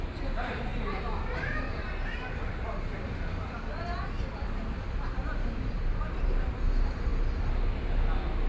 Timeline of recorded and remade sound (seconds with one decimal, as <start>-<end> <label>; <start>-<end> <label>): 0.0-3.3 recorded; 3.3-3.8 remade; 3.8-8.5 recorded